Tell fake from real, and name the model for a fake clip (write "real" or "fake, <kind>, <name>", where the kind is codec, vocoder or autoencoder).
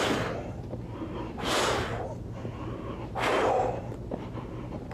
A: real